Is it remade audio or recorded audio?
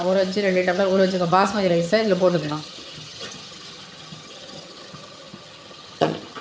remade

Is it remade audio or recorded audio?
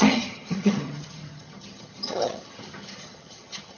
remade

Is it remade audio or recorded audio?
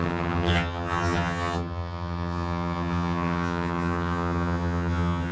remade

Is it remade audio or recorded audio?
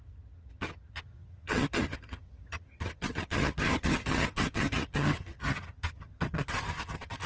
remade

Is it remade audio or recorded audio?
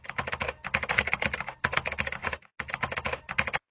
recorded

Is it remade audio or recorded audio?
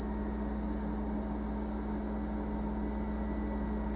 recorded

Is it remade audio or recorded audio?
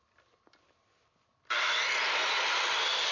recorded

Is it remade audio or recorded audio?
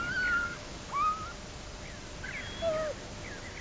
recorded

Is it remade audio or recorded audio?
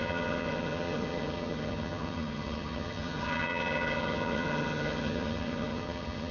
remade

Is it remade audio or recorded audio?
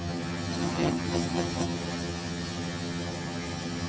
remade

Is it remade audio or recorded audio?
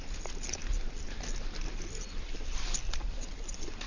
recorded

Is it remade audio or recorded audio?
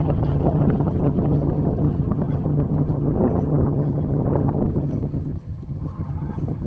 remade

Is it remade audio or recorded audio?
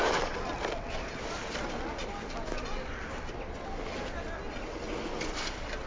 recorded